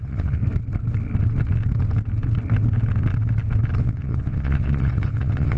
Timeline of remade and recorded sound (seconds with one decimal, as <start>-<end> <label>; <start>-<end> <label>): 0.0-0.4 remade; 0.4-3.8 recorded; 3.8-5.6 remade